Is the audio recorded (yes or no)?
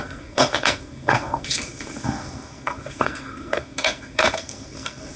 no